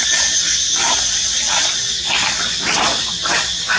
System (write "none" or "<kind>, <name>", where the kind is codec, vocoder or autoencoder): none